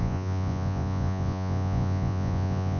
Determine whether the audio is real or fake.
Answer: fake